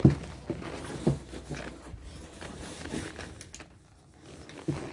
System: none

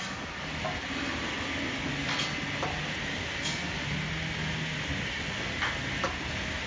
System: none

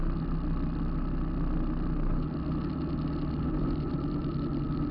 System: none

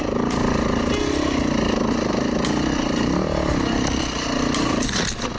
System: none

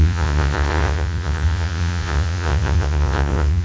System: vocoder, Vocos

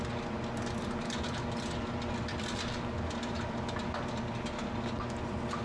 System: none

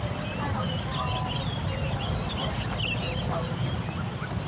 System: none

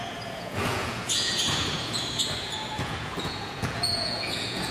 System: vocoder, Vocos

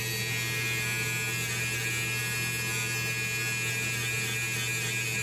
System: none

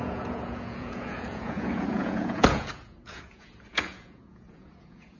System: vocoder, Vocos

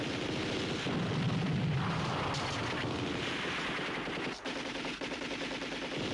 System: none